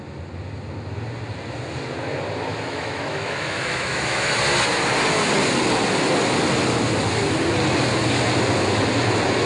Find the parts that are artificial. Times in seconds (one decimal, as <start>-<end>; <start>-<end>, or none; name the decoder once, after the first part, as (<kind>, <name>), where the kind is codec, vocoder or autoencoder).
2.5-4.4 (autoencoder, DAC-VAE)